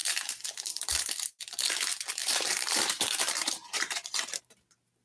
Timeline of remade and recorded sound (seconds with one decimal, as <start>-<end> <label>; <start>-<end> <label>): 0.0-1.0 remade; 1.0-2.2 recorded; 2.2-4.4 remade; 4.4-5.0 recorded